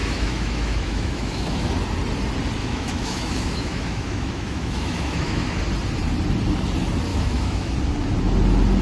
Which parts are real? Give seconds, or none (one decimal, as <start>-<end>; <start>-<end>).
1.7-2.6; 5.6-7.1; 7.7-8.8